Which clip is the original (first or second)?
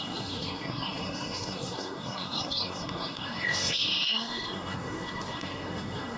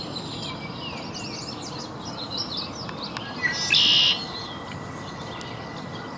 second